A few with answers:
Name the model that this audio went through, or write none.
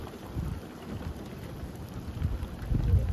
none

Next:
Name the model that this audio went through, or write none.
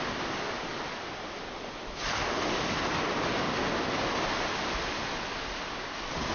none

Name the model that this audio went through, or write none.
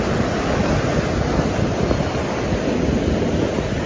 none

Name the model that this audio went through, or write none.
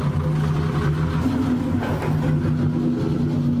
none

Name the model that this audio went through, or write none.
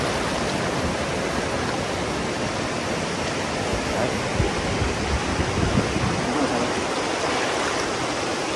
none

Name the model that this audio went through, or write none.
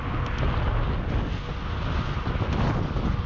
none